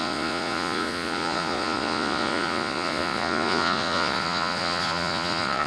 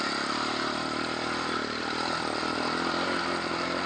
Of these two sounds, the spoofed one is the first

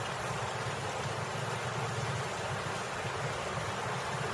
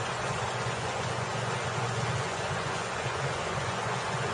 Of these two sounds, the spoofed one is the second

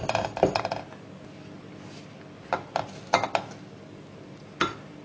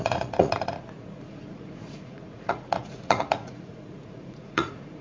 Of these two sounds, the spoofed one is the second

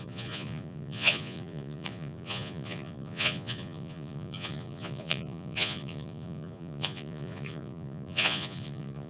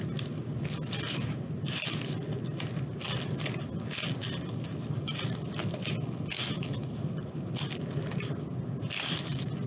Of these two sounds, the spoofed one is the first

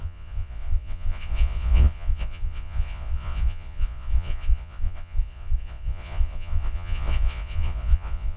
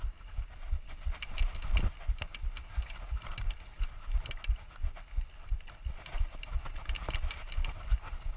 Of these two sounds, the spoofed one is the first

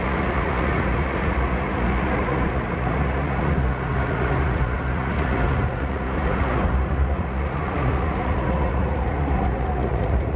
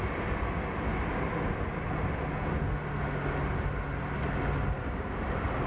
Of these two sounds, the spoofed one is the first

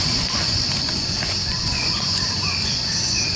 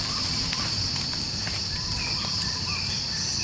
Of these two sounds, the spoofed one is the first